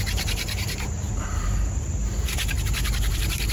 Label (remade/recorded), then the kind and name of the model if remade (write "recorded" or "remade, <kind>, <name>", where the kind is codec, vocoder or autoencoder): remade, vocoder, BigVGAN v2